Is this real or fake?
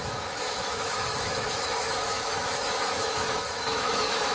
fake